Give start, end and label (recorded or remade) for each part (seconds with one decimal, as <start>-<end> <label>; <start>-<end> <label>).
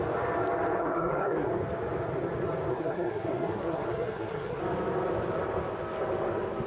0.0-0.8 recorded; 0.8-1.5 remade; 1.5-2.7 recorded; 2.7-4.6 remade; 4.6-6.7 recorded